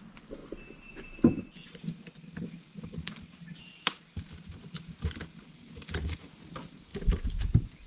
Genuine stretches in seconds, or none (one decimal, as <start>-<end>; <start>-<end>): 0.0-7.9